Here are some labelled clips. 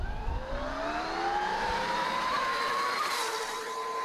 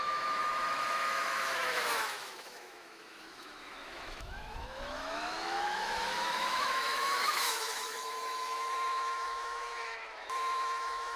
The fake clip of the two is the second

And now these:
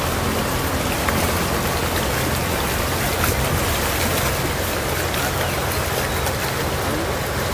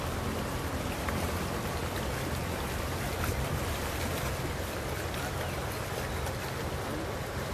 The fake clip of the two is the second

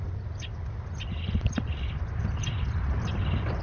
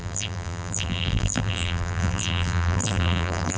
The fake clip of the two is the second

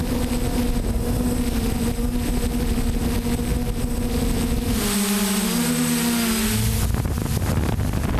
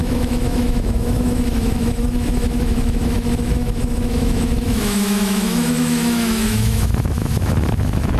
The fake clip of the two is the second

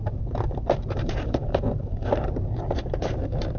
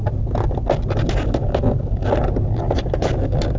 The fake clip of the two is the first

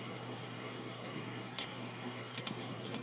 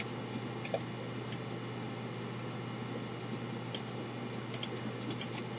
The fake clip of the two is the first